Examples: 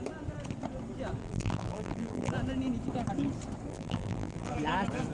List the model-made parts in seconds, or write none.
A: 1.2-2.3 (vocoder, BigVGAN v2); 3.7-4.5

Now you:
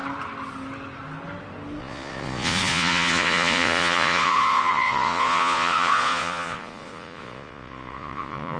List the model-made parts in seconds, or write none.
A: 1.8-8.6 (vocoder, Vocos)